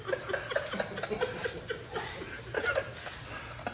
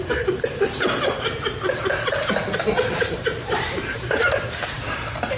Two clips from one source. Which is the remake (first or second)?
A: second